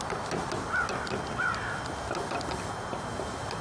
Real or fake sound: real